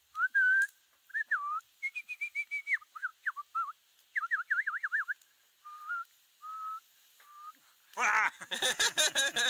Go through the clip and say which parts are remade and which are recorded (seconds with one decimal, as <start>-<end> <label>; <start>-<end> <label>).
0.0-9.5 recorded